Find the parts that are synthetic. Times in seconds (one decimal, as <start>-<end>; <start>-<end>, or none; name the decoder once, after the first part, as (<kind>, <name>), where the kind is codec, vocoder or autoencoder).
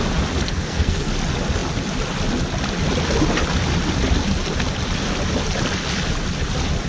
0.5-1.1 (codec, SNAC)